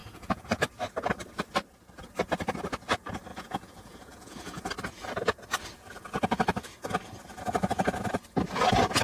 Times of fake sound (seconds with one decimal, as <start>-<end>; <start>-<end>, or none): 0.0-0.7; 3.3-4.7